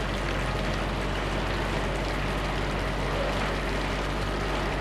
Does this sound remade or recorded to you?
recorded